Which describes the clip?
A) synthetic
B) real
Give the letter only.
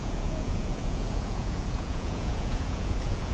A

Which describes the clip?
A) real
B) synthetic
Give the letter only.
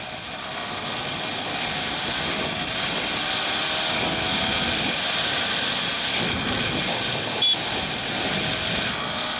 A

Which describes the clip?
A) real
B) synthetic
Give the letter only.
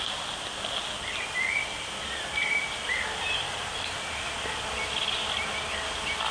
A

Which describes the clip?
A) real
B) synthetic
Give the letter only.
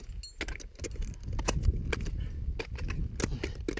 A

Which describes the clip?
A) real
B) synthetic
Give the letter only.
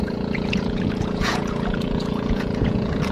B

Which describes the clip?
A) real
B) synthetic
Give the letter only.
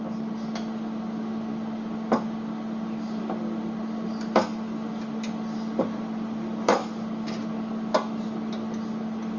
A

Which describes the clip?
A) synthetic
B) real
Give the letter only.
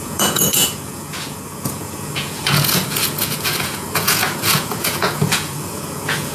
A